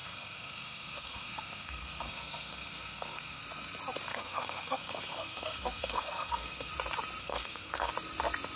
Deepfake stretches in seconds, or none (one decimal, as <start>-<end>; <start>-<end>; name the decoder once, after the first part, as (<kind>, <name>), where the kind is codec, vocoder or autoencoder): 0.0-3.4 (codec, SNAC); 4.1-6.7; 7.2-7.9